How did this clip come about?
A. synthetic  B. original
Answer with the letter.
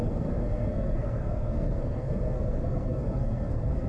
A